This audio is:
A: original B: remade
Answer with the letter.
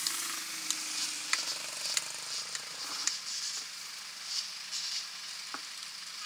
A